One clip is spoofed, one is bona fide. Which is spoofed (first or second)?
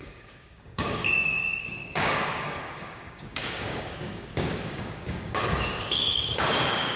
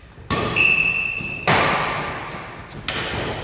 first